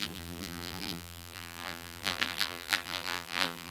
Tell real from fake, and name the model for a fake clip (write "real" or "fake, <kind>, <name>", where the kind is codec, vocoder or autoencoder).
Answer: fake, vocoder, BigVGAN v2